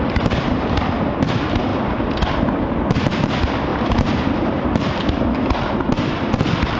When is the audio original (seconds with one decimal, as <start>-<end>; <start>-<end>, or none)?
0.0-3.7; 5.2-6.8